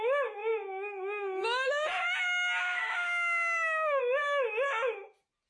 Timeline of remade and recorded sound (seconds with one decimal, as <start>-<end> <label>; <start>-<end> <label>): 0.0-2.6 recorded; 2.6-4.0 remade; 4.0-5.5 recorded